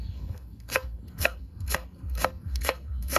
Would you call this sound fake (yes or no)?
yes